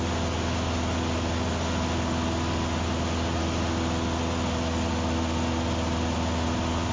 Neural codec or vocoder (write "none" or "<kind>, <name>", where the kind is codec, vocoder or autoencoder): none